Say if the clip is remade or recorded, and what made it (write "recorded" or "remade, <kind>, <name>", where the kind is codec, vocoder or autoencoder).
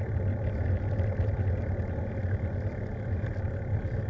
recorded